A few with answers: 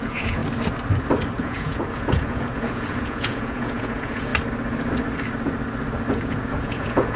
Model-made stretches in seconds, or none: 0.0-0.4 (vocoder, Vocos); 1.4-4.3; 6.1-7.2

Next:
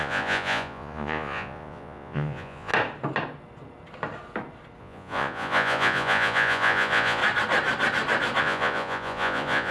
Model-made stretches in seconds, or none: 0.0-2.7 (vocoder, Vocos); 4.8-7.2; 8.4-9.7